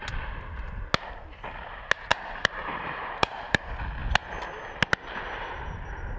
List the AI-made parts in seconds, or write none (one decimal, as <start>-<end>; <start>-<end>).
2.1-3.6